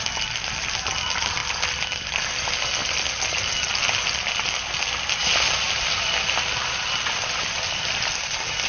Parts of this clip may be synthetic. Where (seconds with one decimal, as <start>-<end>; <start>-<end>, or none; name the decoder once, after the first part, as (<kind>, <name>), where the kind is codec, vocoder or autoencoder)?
0.0-2.8 (vocoder, BigVGAN v2); 4.8-8.7